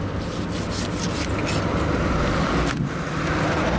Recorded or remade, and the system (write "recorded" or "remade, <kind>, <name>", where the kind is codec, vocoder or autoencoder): recorded